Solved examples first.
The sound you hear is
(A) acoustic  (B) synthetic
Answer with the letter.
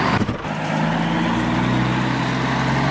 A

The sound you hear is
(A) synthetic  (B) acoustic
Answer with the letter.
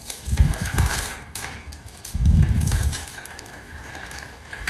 A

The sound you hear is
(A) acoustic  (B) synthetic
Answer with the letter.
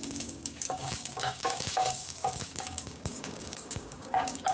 B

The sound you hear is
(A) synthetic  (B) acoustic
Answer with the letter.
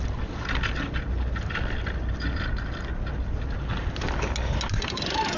B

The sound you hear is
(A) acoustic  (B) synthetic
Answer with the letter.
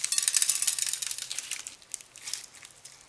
A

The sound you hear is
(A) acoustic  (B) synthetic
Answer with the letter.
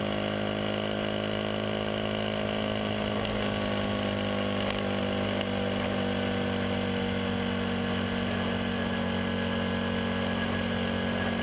A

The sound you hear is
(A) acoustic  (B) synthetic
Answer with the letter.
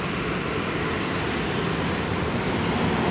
A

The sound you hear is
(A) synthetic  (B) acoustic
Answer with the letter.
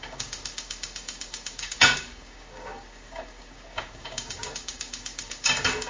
A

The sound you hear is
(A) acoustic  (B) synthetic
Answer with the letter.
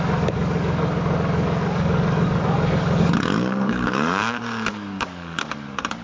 B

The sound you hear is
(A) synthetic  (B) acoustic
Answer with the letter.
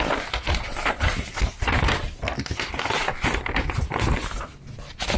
B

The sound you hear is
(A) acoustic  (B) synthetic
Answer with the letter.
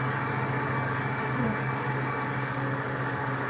B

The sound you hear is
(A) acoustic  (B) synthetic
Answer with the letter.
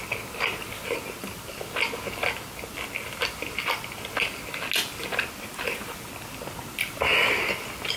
A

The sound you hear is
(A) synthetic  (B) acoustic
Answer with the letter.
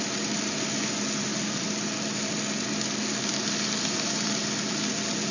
B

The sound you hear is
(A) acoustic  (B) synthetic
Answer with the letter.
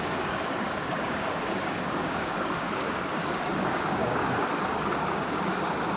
B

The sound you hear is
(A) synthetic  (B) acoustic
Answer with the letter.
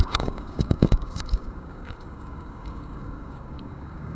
A